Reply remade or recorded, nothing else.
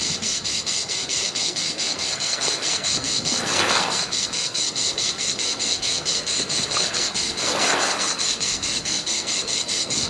remade